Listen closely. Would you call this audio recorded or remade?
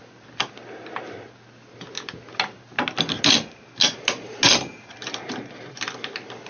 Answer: recorded